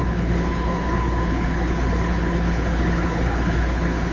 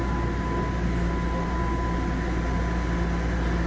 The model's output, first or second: first